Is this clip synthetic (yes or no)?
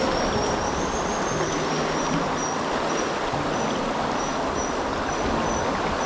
no